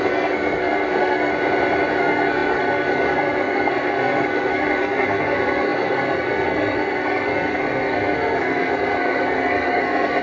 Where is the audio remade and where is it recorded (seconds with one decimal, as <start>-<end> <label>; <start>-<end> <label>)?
0.0-1.3 remade; 1.3-1.9 recorded; 1.9-10.2 remade